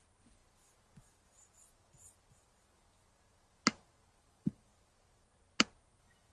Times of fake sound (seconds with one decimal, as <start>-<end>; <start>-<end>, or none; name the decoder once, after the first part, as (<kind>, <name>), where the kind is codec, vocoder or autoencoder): 0.0-0.4 (vocoder, BigVGAN v2); 4.2-4.7; 5.8-6.3